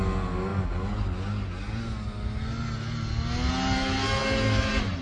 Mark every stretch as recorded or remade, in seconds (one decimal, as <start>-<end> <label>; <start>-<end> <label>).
0.0-5.0 recorded